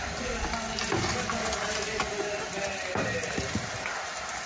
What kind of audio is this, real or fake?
real